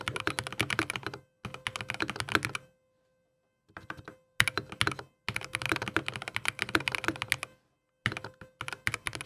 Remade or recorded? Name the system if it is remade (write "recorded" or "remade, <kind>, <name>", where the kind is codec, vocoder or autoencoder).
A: recorded